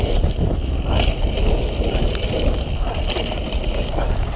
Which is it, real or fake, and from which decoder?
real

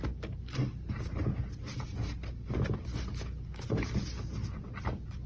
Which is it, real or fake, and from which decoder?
real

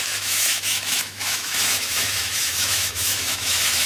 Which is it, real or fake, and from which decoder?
fake, autoencoder, DAC-VAE